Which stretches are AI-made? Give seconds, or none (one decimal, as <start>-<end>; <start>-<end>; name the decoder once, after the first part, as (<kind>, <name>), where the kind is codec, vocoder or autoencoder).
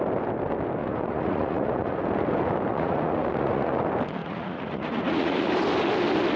0.8-2.0 (vocoder, Vocos); 2.7-3.8; 4.2-5.5